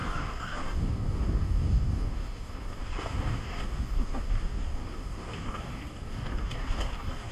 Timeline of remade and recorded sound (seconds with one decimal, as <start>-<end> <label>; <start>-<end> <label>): 0.0-7.3 remade